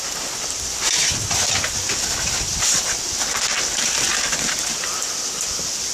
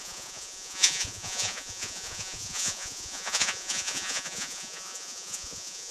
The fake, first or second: second